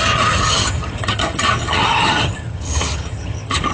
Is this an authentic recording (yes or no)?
no